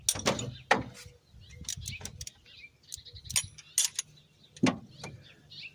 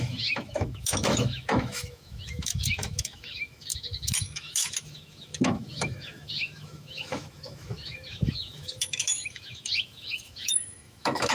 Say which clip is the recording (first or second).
first